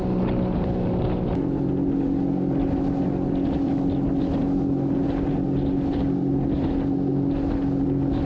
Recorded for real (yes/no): yes